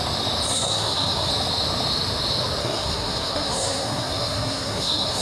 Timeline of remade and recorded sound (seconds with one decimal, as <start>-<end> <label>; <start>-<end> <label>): 0.0-0.5 recorded; 0.5-1.3 remade; 1.3-2.6 recorded; 2.6-5.2 remade